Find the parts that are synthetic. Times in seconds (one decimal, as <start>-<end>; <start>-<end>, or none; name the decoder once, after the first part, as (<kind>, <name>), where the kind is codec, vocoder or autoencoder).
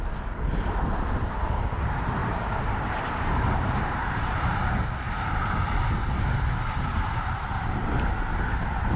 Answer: 2.2-3.8 (vocoder, BigVGAN v2); 6.9-8.1